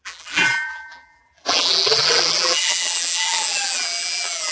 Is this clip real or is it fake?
fake